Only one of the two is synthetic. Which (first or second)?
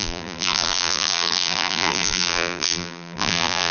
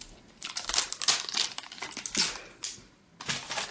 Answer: first